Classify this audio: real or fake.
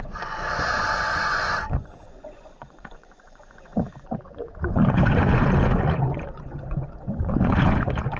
fake